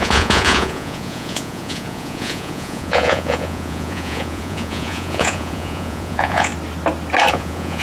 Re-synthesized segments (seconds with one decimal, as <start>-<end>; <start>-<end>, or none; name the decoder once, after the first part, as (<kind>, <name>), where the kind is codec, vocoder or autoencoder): 0.0-6.5 (vocoder, Vocos); 7.3-7.8